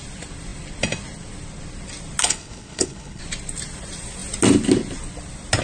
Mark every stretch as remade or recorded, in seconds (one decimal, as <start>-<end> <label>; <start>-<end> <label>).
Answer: 0.0-2.2 recorded; 2.2-3.2 remade; 3.2-5.6 recorded